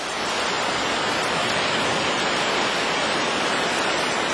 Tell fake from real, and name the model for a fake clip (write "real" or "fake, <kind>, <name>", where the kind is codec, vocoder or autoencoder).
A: real